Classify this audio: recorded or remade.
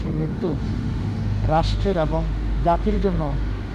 remade